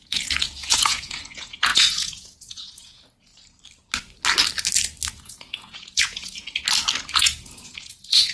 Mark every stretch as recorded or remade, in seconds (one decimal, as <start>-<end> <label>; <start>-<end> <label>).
0.0-3.3 remade; 3.3-5.1 recorded; 5.1-6.4 remade; 6.4-7.1 recorded; 7.1-8.3 remade